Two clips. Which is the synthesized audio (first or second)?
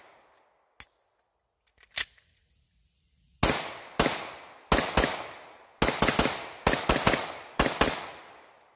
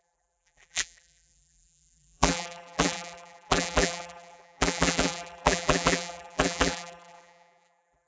second